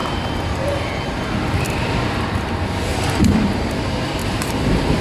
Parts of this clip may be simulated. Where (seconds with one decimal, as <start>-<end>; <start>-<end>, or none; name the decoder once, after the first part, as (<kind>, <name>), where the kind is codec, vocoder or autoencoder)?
0.0-0.5 (vocoder, BigVGAN v2); 2.9-3.8; 4.2-5.0